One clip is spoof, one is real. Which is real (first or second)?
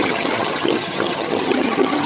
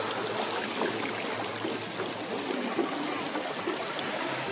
second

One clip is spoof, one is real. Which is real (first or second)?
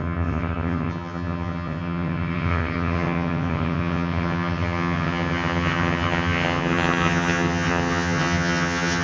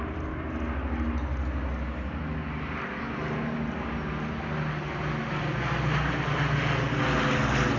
second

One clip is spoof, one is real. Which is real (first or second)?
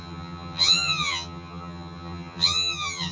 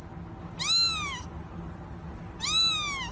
second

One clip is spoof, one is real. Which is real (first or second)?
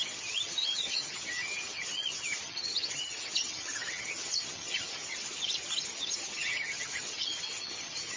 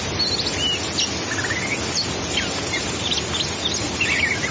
second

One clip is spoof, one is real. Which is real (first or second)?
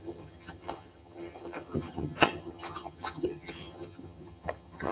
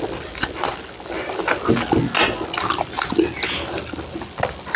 second